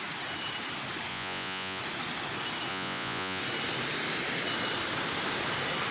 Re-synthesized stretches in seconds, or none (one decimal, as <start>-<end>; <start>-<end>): 1.1-1.8; 2.7-3.4